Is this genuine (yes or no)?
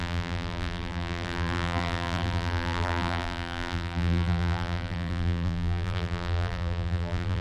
no